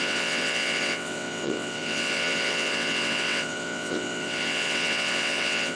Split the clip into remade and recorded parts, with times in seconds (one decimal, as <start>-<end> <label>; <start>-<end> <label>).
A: 0.0-5.8 remade